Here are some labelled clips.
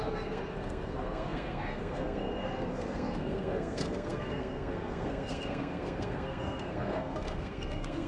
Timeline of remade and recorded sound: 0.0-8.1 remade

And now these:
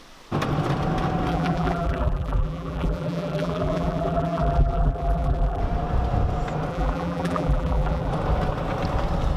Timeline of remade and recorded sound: 0.0-1.3 recorded; 1.3-5.6 remade; 5.6-6.7 recorded; 6.7-8.1 remade; 8.1-9.4 recorded

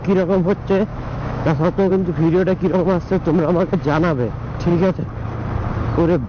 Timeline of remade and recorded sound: 0.0-0.9 recorded; 0.9-1.9 remade; 1.9-6.3 recorded